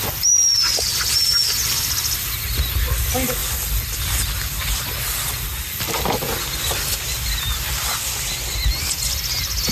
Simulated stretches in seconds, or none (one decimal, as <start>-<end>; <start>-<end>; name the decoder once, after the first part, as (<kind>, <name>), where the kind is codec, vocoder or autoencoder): none